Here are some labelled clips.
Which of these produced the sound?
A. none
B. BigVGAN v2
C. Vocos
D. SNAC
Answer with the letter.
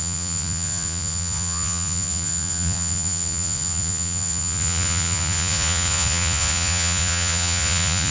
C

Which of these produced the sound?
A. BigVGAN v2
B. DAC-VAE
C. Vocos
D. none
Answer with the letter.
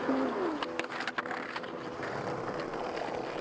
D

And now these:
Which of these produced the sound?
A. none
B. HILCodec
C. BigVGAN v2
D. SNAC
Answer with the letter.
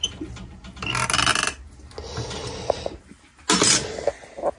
A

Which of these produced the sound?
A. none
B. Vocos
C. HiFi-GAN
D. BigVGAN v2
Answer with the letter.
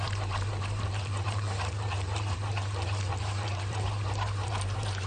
D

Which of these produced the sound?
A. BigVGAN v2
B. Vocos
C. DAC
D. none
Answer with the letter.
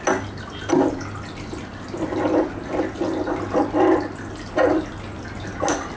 D